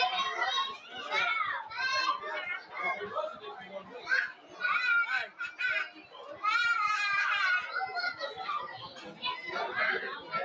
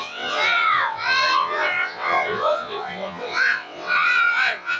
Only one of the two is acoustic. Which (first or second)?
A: first